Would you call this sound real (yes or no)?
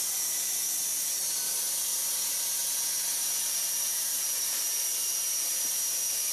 yes